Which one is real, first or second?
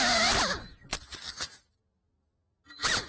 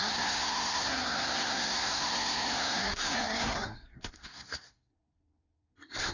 first